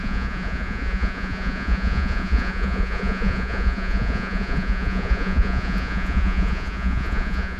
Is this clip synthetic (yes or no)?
yes